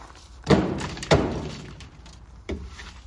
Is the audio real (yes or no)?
no